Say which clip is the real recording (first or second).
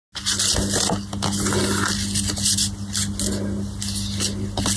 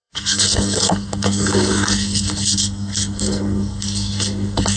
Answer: first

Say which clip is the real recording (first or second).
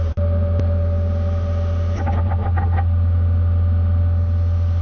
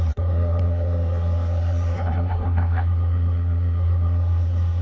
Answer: first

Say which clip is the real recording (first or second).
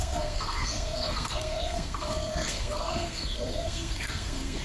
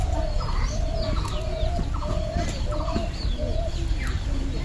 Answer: second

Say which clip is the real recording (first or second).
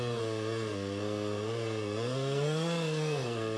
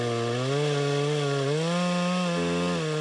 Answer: second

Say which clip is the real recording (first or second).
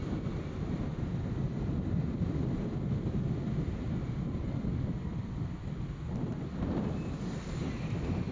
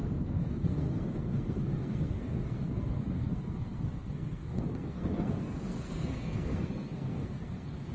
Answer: first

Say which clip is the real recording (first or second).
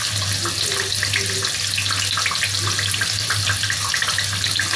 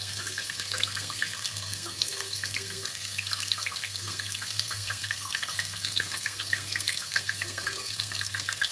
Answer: first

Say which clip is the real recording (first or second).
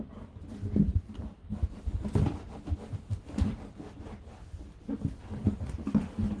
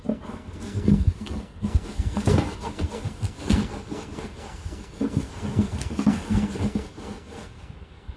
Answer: first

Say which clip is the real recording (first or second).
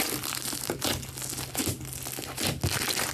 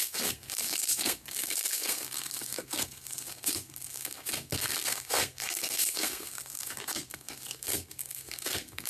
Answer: first